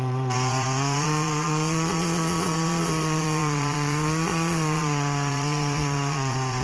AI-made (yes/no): yes